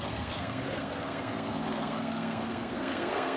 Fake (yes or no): yes